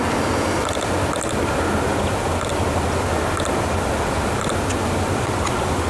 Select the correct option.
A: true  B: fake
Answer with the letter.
A